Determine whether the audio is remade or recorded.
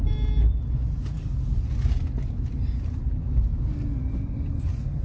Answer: recorded